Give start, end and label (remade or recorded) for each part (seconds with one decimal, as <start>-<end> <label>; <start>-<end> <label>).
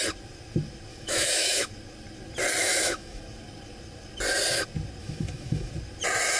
0.0-0.9 recorded; 0.9-1.7 remade; 1.7-2.6 recorded; 2.6-3.2 remade; 3.2-5.0 recorded; 5.0-5.7 remade; 5.7-6.4 recorded